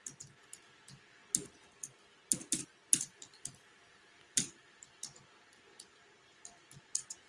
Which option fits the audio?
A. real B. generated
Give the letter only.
A